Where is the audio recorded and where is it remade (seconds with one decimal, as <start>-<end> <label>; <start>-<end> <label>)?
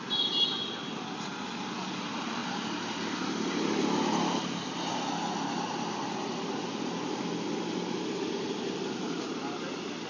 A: 0.0-10.1 recorded